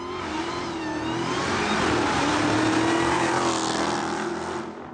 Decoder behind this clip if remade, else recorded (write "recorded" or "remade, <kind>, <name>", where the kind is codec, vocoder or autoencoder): recorded